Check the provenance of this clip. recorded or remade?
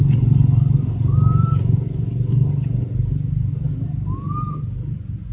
recorded